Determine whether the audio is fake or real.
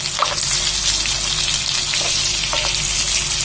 real